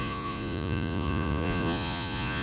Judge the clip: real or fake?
fake